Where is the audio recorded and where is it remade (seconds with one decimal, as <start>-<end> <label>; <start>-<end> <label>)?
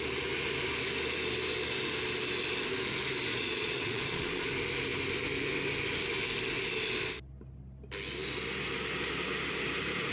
0.0-3.3 recorded; 3.3-4.5 remade; 4.5-10.1 recorded